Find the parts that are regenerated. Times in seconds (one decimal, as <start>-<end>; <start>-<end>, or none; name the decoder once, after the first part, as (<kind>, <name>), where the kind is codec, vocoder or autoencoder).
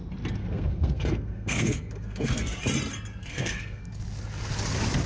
0.4-2.6 (codec, SNAC); 3.2-3.8